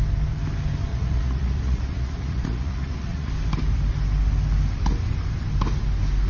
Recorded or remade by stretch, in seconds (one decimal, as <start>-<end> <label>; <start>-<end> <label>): 0.0-0.9 recorded; 0.9-3.3 remade; 3.3-6.3 recorded